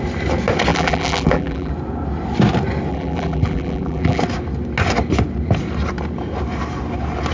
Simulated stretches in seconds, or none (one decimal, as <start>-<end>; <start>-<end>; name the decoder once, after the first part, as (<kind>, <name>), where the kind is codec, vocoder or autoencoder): 0.7-1.7 (vocoder, BigVGAN v2); 2.9-4.2